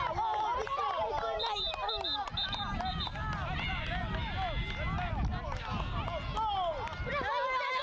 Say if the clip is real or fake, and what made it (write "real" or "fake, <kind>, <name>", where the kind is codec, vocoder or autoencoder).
real